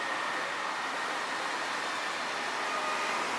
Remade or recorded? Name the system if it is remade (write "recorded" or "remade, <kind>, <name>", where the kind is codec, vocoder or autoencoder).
recorded